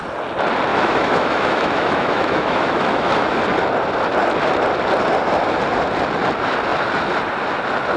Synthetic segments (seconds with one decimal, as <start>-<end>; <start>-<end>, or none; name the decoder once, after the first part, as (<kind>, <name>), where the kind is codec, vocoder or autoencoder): 0.7-3.4 (autoencoder, DAC-VAE)